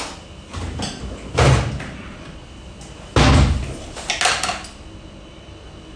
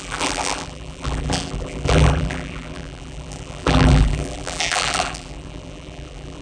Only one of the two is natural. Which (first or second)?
first